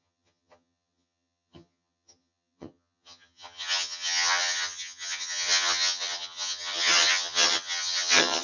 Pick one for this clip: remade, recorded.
remade